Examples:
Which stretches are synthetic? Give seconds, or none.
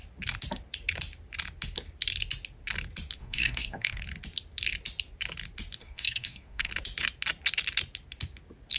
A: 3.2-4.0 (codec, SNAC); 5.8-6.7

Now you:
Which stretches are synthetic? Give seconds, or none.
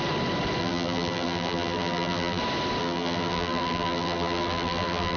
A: 0.6-2.4 (vocoder, BigVGAN v2); 2.8-5.2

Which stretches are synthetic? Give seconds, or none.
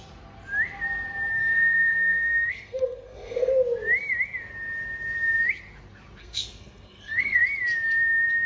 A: 1.3-3.5 (codec, SNAC); 6.2-7.4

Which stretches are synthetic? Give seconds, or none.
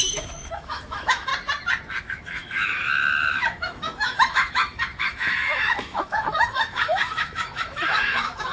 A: 0.0-1.3 (autoencoder, DAC-VAE); 2.0-8.5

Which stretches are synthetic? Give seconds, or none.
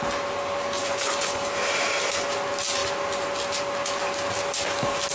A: 0.8-1.4 (vocoder, Vocos)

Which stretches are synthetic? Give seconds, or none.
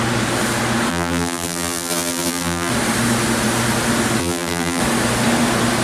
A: 0.9-2.7 (vocoder, BigVGAN v2); 4.2-4.8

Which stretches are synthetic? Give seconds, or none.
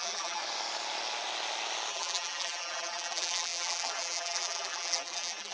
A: 0.0-0.4 (vocoder, BigVGAN v2); 1.9-5.5